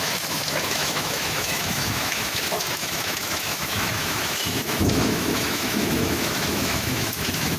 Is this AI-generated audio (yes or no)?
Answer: yes